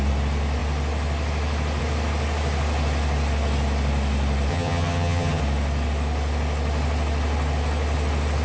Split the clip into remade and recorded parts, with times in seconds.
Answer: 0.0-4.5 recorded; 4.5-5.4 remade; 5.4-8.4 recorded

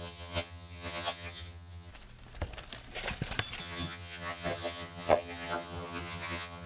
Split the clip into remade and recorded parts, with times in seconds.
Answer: 0.0-1.9 remade; 1.9-3.6 recorded; 3.6-6.7 remade

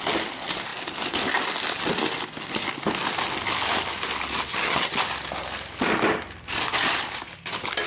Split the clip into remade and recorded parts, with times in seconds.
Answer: 0.0-4.5 recorded; 4.5-5.0 remade; 5.0-7.9 recorded

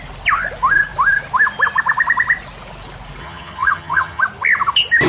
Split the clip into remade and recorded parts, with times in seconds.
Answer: 0.0-3.2 recorded; 3.2-4.2 remade; 4.2-5.1 recorded

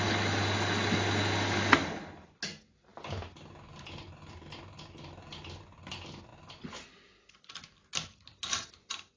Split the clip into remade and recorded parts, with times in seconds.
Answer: 0.0-9.2 recorded

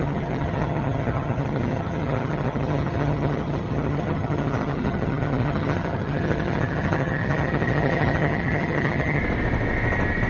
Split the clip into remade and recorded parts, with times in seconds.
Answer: 0.0-9.2 remade; 9.2-10.3 recorded